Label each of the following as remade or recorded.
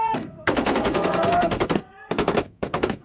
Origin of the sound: remade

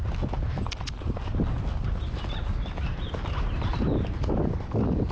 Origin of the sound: recorded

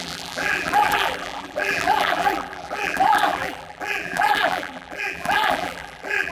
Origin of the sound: remade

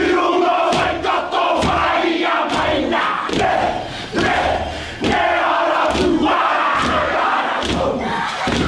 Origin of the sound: recorded